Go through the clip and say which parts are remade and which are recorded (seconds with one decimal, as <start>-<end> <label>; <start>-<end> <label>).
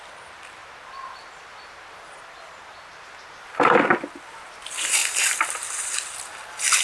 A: 0.0-6.8 recorded